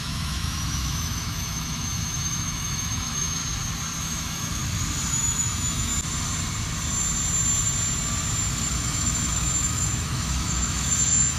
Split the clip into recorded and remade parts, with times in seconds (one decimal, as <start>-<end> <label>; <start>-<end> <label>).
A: 0.0-3.4 remade; 3.4-4.0 recorded; 4.0-4.6 remade; 4.6-5.1 recorded; 5.1-5.9 remade; 5.9-8.7 recorded; 8.7-11.4 remade